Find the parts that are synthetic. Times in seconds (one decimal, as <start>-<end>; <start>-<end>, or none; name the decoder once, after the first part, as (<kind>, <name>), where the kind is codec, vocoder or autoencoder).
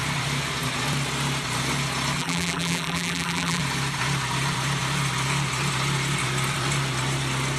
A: 2.2-3.6 (vocoder, BigVGAN v2)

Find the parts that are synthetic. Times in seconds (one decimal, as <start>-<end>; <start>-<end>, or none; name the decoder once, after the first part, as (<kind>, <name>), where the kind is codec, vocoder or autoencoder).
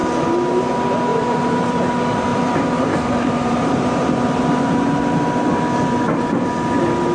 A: 0.0-0.7 (vocoder, BigVGAN v2); 1.1-1.9; 2.3-5.0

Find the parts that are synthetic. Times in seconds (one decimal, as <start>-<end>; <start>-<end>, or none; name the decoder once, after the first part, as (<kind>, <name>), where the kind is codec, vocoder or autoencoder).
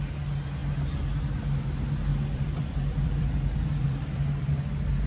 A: 2.1-4.6 (vocoder, BigVGAN v2)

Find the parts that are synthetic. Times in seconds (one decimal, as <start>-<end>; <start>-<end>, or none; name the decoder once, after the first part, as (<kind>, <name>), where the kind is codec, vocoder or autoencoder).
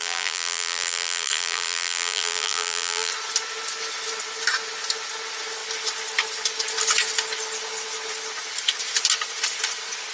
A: 0.0-3.1 (vocoder, BigVGAN v2)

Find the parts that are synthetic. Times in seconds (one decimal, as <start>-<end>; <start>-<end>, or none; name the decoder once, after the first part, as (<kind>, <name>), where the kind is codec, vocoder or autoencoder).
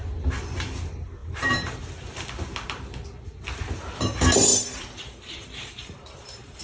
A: 1.2-1.9 (vocoder, BigVGAN v2); 4.5-6.6